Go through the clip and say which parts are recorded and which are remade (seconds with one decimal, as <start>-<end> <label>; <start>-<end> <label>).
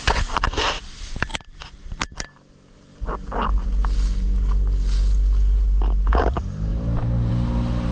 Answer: 0.0-7.9 recorded